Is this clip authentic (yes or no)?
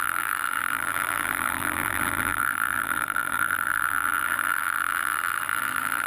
no